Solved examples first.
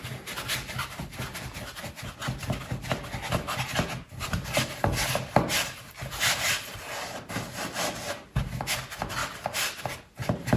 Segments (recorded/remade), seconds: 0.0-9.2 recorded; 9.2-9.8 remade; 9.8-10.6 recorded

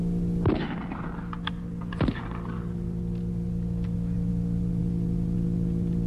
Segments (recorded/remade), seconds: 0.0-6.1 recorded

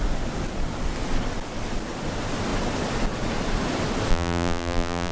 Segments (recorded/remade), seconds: 0.0-4.1 recorded; 4.1-5.1 remade

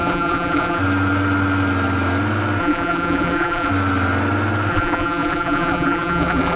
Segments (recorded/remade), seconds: 0.0-0.8 remade; 0.8-2.6 recorded; 2.6-3.7 remade; 3.7-4.7 recorded; 4.7-6.6 remade

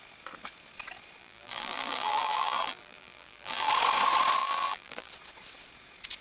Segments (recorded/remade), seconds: 0.0-1.2 recorded; 1.2-3.7 remade; 3.7-4.4 recorded; 4.4-5.1 remade; 5.1-6.2 recorded

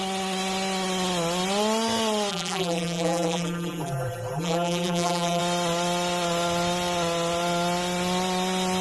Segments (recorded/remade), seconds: 0.0-2.3 recorded; 2.3-5.4 remade; 5.4-8.8 recorded

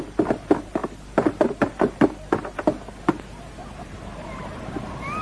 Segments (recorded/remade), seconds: 0.0-3.6 recorded; 3.6-4.7 remade; 4.7-5.2 recorded